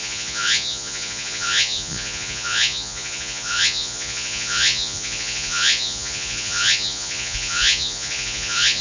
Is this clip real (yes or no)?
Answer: no